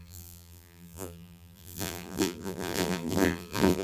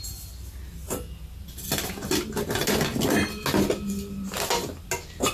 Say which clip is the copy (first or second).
first